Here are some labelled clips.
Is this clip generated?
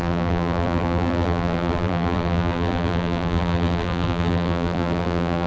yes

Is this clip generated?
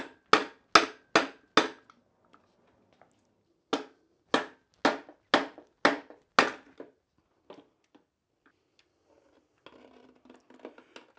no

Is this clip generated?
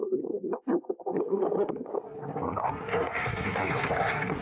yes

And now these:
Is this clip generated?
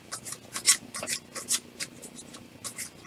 no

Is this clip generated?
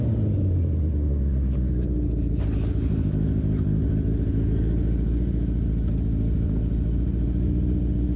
no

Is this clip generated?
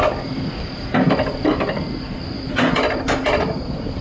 no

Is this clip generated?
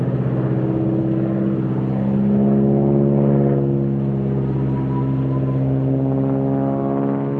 no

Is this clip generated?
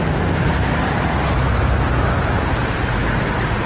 yes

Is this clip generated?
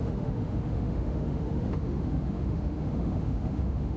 yes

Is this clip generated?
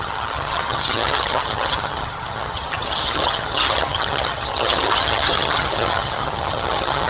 yes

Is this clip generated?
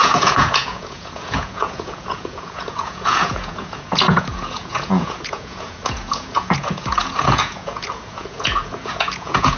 yes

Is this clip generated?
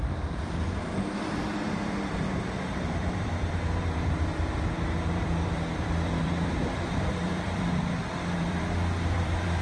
yes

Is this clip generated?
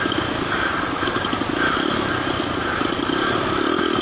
no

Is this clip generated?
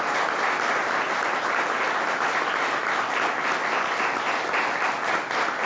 no